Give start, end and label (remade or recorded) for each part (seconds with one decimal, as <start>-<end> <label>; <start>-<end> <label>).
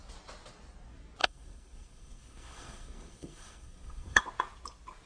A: 0.0-1.2 recorded; 1.2-4.2 remade; 4.2-5.1 recorded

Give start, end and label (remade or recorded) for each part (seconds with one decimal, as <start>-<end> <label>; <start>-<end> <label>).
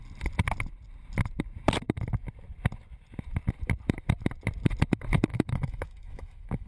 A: 0.0-5.3 recorded; 5.3-6.7 remade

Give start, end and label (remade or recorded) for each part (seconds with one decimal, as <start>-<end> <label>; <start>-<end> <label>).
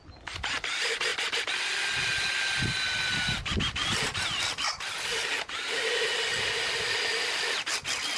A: 0.0-8.2 recorded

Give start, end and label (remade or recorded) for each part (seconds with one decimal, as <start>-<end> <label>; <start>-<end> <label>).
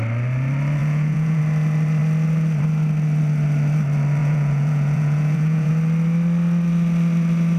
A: 0.0-0.8 recorded; 0.8-1.4 remade; 1.4-4.2 recorded; 4.2-5.7 remade; 5.7-7.6 recorded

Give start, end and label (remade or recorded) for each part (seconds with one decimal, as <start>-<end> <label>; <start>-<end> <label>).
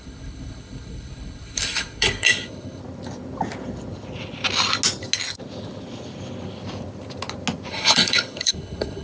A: 0.0-2.8 remade; 2.8-7.7 recorded; 7.7-9.0 remade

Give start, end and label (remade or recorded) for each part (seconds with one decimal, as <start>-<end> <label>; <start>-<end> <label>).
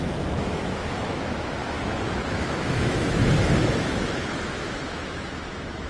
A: 0.0-5.9 remade